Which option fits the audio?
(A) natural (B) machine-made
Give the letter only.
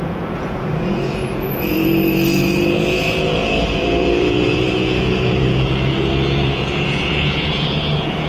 B